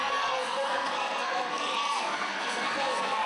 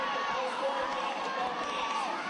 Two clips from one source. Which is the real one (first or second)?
second